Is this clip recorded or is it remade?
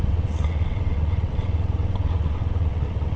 remade